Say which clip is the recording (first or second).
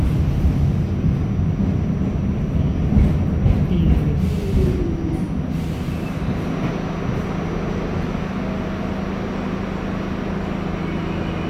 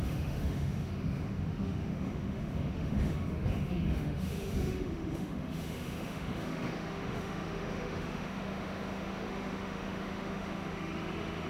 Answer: first